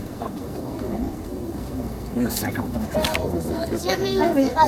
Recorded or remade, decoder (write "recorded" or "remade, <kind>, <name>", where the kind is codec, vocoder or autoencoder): remade, codec, SNAC